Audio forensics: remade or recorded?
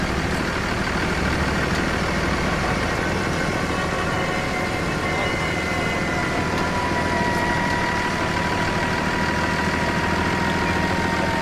recorded